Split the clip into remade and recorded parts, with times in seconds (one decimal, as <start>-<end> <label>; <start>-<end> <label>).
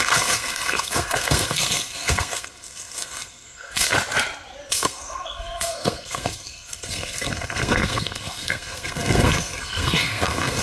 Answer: 0.0-3.9 remade; 3.9-4.7 recorded; 4.7-10.6 remade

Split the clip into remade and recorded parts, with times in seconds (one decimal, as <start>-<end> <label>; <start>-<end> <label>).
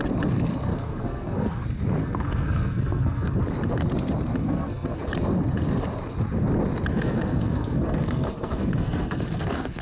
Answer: 0.0-0.7 recorded; 0.7-1.6 remade; 1.6-2.0 recorded; 2.0-3.4 remade; 3.4-4.4 recorded; 4.4-5.0 remade; 5.0-6.9 recorded; 6.9-9.8 remade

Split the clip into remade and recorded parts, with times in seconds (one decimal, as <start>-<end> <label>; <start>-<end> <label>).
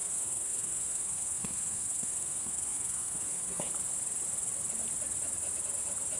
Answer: 0.0-3.7 remade; 3.7-6.2 recorded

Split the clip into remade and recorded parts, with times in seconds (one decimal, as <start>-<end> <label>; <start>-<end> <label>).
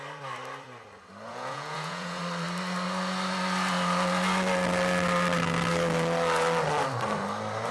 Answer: 0.0-1.3 recorded; 1.3-2.2 remade; 2.2-7.7 recorded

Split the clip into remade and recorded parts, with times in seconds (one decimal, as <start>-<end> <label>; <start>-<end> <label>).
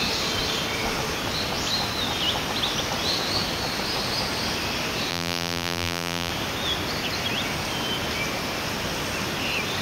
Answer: 0.0-5.1 recorded; 5.1-6.3 remade; 6.3-9.8 recorded